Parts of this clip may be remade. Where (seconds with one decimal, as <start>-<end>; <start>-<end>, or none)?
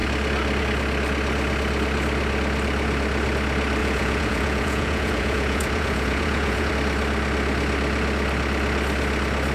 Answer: 3.8-6.7